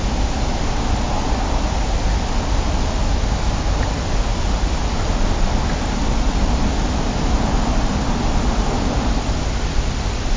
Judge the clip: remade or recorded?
recorded